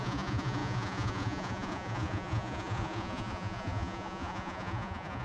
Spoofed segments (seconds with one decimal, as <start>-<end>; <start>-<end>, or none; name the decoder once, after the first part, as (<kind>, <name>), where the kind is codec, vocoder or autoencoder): 0.0-5.2 (vocoder, Vocos)